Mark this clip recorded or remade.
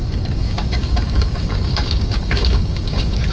remade